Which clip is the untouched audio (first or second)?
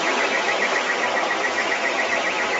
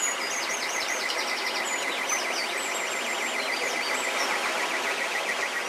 second